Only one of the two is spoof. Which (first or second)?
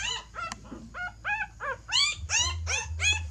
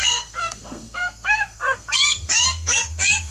second